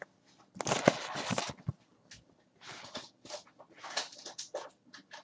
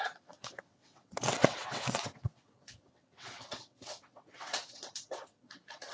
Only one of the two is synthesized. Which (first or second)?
second